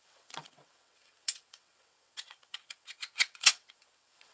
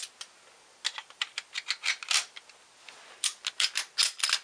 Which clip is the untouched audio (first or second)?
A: second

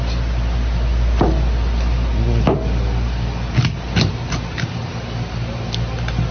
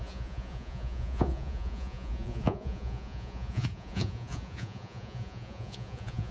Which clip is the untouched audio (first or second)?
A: first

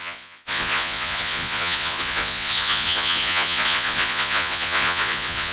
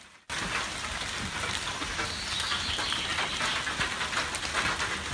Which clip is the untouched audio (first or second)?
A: second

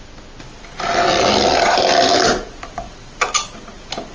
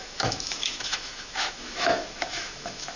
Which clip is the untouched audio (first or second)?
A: first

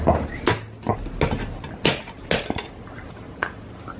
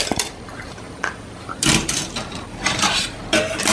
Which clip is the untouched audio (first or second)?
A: first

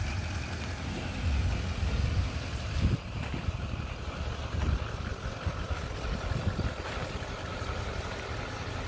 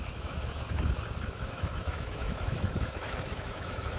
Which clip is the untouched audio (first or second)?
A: first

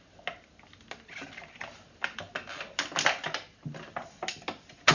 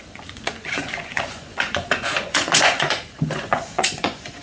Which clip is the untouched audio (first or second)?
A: first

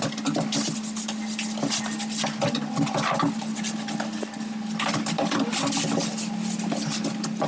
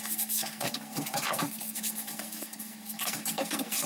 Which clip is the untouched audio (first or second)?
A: first